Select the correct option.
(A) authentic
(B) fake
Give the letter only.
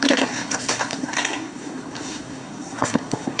B